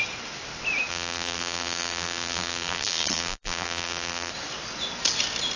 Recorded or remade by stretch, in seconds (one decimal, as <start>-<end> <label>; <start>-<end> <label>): 0.0-0.9 recorded; 0.9-4.3 remade; 4.3-5.6 recorded